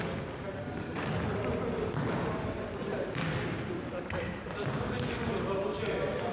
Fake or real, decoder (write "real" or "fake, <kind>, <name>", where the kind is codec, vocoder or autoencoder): real